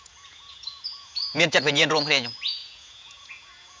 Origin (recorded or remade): remade